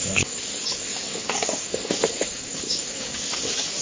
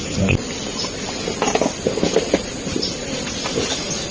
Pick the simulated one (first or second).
first